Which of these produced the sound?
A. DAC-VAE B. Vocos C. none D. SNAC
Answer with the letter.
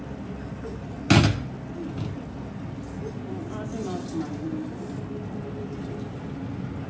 C